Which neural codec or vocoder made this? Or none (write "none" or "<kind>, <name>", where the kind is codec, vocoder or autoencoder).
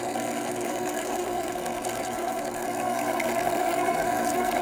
codec, SNAC